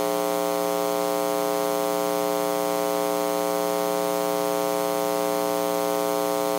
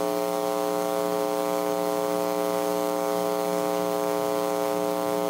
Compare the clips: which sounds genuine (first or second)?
first